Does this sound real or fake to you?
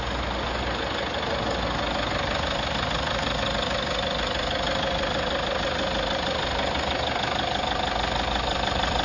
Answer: real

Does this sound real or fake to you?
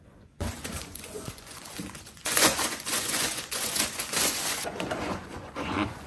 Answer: fake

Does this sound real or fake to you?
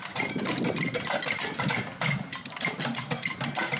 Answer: real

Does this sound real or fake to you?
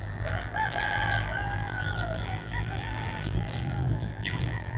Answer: fake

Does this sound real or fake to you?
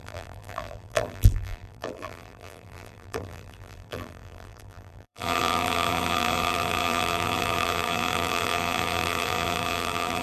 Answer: fake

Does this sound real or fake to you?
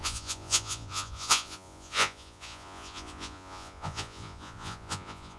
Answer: fake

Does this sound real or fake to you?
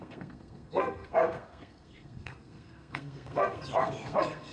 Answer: fake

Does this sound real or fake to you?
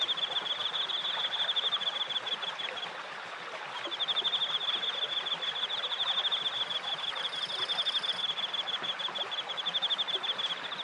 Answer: real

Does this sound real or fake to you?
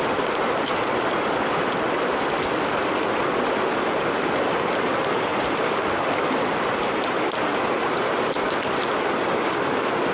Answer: real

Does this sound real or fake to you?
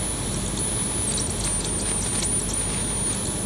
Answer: real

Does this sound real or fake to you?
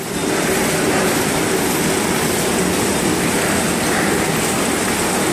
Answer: real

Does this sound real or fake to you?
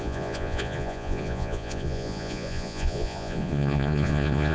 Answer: fake